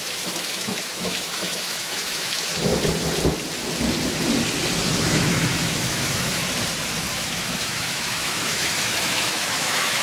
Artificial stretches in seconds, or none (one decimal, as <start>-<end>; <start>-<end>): 0.0-2.7; 4.9-6.4; 7.1-10.0